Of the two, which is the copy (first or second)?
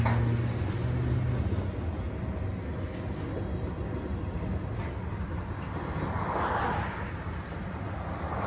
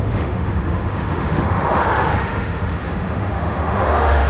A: second